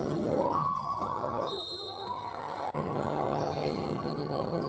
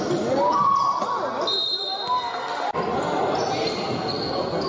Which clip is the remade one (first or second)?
first